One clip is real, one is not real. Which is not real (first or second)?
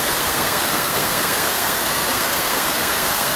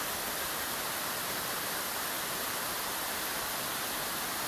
first